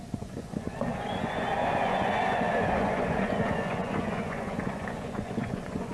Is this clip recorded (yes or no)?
no